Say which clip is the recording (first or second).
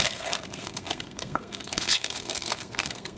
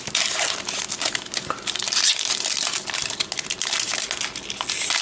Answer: second